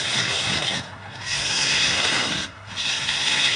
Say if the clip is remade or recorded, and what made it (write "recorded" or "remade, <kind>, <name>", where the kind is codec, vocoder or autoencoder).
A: remade, codec, SNAC